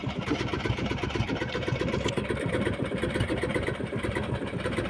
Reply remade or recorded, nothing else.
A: remade